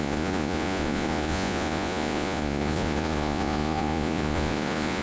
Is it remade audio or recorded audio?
remade